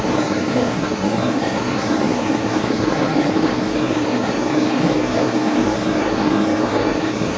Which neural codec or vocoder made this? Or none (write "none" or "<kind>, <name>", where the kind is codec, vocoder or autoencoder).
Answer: codec, SNAC